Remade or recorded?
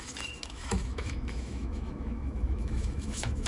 remade